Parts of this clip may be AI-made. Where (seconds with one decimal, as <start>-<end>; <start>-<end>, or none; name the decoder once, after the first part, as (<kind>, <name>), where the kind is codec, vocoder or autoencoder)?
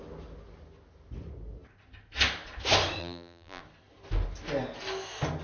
3.0-3.6 (vocoder, BigVGAN v2)